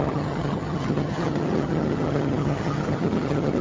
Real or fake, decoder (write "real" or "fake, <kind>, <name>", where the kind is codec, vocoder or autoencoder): fake, vocoder, HiFi-GAN